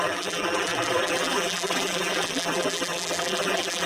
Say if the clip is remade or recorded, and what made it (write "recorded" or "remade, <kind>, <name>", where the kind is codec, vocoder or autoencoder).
remade, vocoder, BigVGAN v2